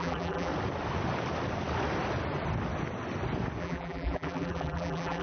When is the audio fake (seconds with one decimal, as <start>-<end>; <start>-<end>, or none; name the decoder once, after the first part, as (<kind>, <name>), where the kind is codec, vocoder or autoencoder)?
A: 0.0-0.5 (vocoder, BigVGAN v2); 3.6-5.2